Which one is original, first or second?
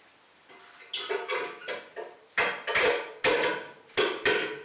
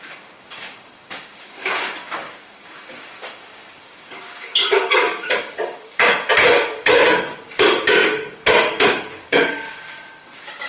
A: first